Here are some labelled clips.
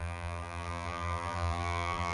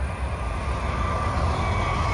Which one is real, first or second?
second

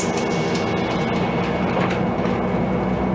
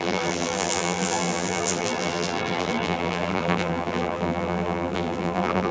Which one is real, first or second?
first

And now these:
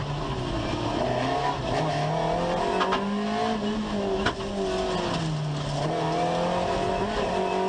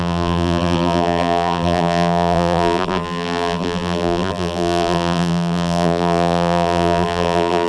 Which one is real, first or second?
first